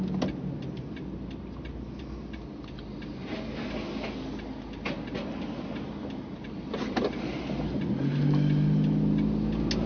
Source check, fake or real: real